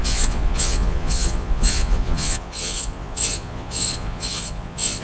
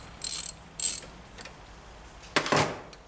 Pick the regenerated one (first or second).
first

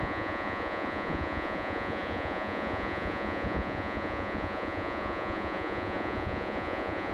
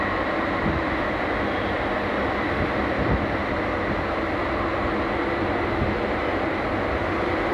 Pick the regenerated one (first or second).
first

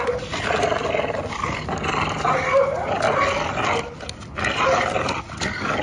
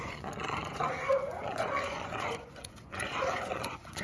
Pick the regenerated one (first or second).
second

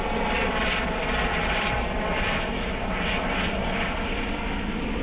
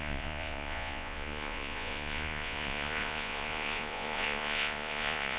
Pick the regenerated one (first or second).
second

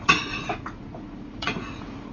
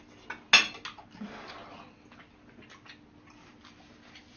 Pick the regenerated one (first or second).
first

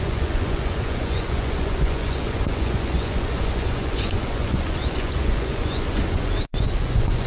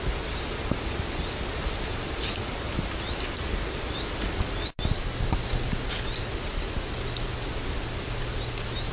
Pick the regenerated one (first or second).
first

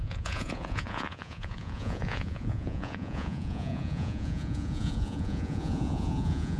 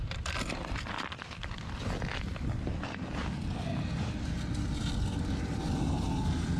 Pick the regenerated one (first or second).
first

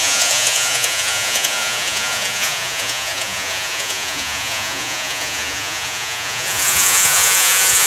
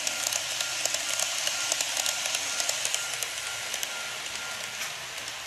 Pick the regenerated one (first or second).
first